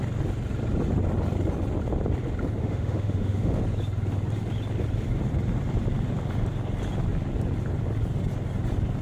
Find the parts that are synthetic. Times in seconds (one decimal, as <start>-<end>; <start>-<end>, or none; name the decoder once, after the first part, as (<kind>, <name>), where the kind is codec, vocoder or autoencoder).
2.6-3.6 (autoencoder, DAC-VAE)

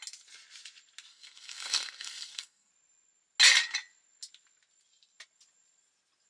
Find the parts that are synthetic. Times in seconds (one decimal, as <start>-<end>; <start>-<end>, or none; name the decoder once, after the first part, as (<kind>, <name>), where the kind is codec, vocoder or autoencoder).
1.1-2.7 (codec, SNAC)

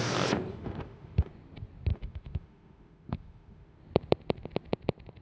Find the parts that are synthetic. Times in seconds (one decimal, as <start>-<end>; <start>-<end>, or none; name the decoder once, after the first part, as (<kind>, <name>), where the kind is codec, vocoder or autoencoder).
0.5-1.3 (autoencoder, DAC-VAE); 1.9-3.8